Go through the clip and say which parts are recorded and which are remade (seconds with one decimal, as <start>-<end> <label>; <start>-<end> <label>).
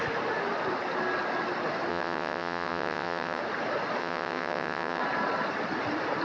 0.0-1.9 recorded; 1.9-3.4 remade; 3.4-4.0 recorded; 4.0-5.0 remade; 5.0-6.2 recorded